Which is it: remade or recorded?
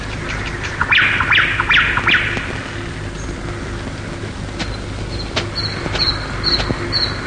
recorded